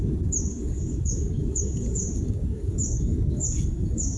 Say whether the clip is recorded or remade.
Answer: remade